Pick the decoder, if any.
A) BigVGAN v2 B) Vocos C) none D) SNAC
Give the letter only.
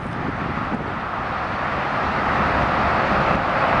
C